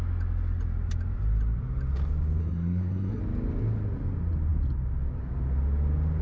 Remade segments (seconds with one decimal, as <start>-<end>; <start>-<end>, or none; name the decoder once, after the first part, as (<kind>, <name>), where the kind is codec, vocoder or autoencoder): 2.4-3.2 (codec, SNAC)